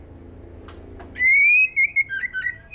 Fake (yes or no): no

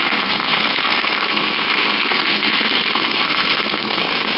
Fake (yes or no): yes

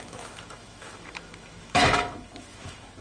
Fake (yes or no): yes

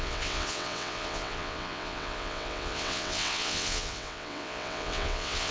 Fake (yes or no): yes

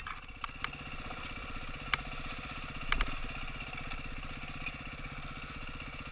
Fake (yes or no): no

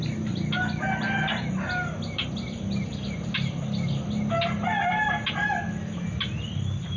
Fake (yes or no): no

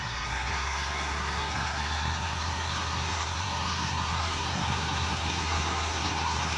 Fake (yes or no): yes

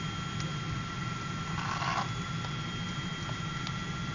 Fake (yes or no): no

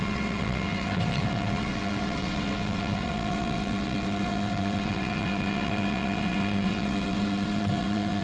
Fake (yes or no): yes